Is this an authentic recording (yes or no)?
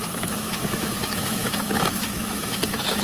no